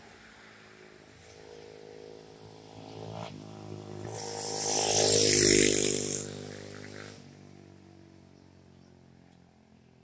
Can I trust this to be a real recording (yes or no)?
yes